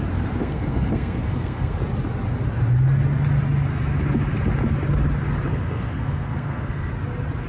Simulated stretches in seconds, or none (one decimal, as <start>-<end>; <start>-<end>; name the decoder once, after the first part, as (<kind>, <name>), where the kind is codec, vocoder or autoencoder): 0.4-1.8 (codec, SNAC); 5.5-6.9